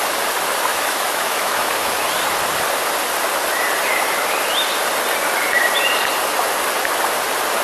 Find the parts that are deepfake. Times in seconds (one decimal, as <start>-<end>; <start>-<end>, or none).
0.7-1.9